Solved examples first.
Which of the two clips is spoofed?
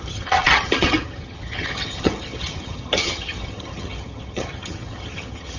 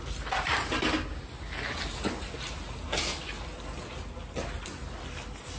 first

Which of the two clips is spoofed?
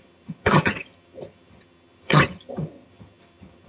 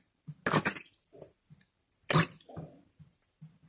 first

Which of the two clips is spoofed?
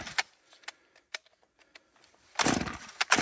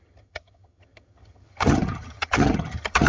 second